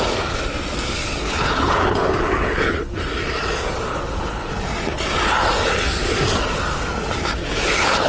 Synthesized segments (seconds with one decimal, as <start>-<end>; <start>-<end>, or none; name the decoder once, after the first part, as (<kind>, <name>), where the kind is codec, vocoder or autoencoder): 1.2-3.0 (codec, HILCodec); 3.9-4.5; 7.4-8.1